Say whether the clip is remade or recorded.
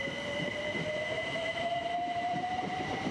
remade